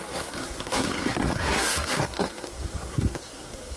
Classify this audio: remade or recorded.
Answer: remade